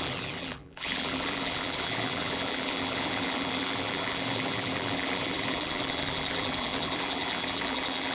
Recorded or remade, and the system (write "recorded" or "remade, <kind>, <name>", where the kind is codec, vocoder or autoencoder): remade, vocoder, BigVGAN v2